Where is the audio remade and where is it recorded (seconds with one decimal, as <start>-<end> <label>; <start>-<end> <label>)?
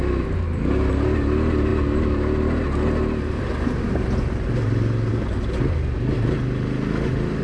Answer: 0.0-7.4 recorded